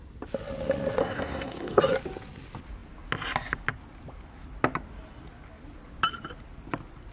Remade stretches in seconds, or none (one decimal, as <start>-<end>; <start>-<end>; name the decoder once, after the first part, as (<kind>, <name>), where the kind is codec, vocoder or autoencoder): 1.0-1.8 (codec, SNAC)